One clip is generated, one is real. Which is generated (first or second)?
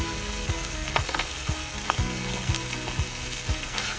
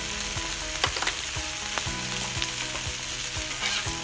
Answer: first